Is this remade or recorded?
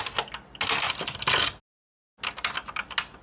recorded